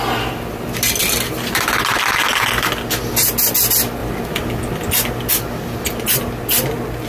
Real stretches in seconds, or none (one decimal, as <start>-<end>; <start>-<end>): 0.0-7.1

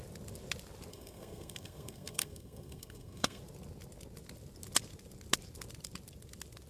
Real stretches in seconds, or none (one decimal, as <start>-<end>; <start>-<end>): 0.0-0.9; 3.4-6.7

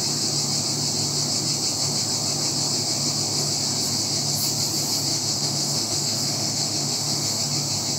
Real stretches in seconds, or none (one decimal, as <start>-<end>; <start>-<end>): 0.0-5.1; 7.4-8.0